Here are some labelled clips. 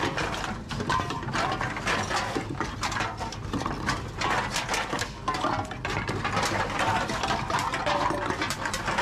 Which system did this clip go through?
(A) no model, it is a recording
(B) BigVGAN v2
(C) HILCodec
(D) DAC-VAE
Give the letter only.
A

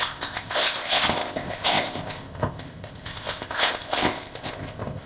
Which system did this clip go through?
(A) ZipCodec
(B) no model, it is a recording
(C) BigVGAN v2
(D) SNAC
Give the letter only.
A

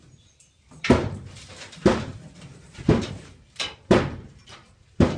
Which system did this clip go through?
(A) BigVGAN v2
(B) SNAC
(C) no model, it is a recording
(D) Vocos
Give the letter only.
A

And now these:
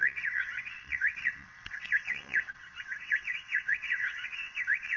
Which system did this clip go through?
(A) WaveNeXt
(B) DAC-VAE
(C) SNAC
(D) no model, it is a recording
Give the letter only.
A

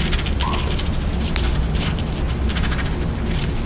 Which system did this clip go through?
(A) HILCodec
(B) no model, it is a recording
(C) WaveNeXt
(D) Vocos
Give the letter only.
B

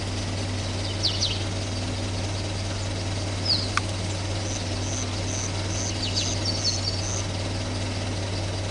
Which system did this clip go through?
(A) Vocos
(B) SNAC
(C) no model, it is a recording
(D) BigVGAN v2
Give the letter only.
C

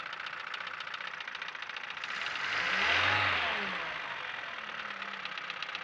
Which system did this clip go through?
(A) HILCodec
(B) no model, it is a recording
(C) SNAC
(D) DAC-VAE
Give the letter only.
B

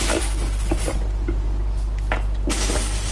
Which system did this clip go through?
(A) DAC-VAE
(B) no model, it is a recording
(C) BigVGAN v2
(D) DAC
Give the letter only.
C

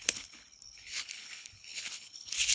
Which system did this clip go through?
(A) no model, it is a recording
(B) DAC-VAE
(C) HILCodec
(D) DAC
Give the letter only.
C